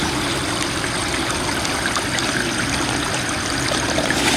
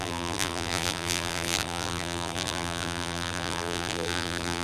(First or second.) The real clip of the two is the first